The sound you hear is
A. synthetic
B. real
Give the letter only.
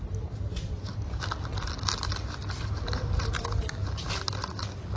B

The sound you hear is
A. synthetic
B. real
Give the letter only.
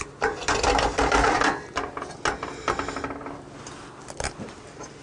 B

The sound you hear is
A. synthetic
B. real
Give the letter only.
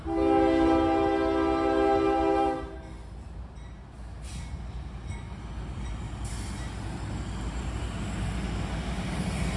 B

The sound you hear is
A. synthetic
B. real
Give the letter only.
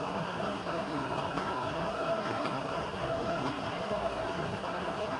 A